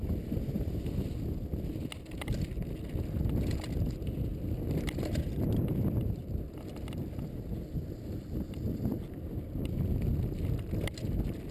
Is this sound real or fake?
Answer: real